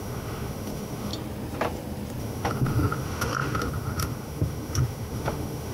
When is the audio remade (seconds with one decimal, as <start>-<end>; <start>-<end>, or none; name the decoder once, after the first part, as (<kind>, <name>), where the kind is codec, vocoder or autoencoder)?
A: 0.0-1.1 (autoencoder, DAC-VAE); 2.2-5.7